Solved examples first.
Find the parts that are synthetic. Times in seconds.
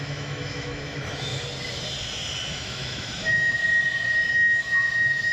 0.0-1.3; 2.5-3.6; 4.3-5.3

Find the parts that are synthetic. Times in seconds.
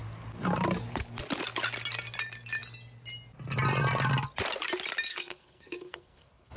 5.1-6.6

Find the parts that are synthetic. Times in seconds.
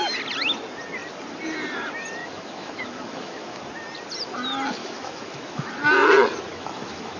2.2-3.6; 4.8-5.7; 6.5-7.2